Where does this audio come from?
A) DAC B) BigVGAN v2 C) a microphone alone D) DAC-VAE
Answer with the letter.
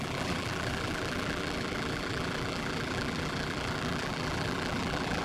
B